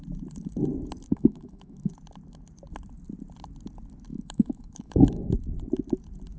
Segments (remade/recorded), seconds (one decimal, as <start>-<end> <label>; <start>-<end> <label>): 0.0-1.1 recorded; 1.1-1.9 remade; 1.9-4.1 recorded; 4.1-5.3 remade; 5.3-6.4 recorded